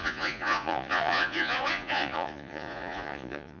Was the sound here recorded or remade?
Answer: remade